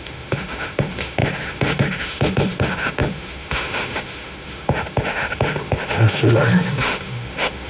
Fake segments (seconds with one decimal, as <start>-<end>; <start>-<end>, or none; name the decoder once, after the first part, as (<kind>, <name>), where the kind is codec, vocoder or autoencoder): 0.0-7.7 (autoencoder, DAC-VAE)